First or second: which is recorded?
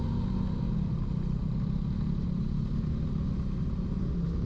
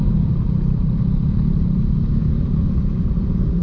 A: first